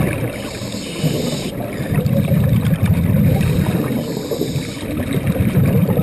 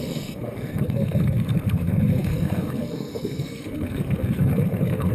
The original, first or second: first